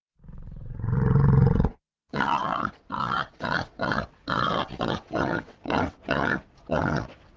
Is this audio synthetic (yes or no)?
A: yes